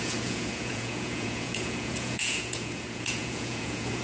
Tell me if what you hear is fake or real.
fake